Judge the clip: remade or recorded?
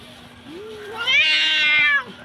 recorded